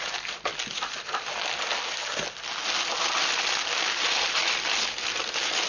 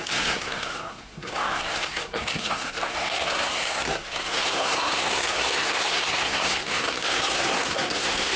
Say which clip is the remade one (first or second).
second